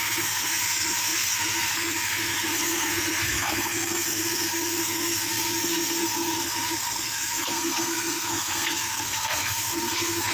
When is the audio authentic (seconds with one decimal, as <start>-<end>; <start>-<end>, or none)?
none